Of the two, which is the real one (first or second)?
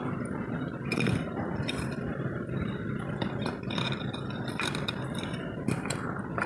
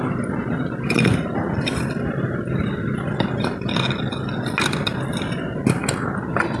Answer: second